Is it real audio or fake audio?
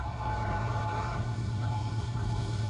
fake